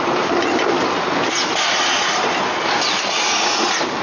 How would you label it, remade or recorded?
recorded